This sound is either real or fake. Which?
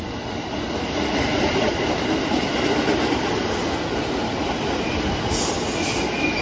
real